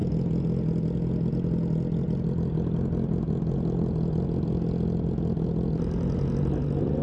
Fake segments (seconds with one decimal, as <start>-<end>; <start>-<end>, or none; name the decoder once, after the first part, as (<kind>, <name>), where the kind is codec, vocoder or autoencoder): none

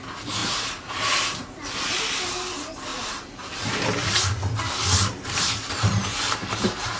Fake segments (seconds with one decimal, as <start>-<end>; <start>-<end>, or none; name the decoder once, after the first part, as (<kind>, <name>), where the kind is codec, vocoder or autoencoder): 0.4-2.0 (vocoder, BigVGAN v2); 2.9-3.8; 6.1-7.0

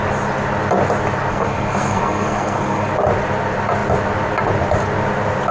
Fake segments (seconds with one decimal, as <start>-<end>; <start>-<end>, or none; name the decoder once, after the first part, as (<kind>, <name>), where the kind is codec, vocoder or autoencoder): 1.3-2.9 (codec, SNAC)

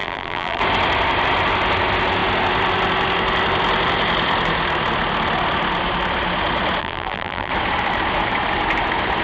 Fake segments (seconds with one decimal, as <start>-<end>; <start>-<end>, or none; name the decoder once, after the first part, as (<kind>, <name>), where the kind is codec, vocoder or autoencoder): 0.0-0.6 (vocoder, BigVGAN v2); 6.8-7.5

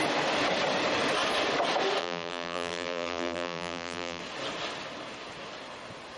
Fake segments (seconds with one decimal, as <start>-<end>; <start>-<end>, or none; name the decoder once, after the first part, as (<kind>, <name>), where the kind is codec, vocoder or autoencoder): 2.0-4.2 (vocoder, BigVGAN v2)